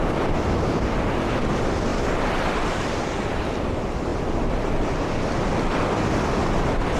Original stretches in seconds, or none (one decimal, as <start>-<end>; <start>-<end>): 0.0-7.0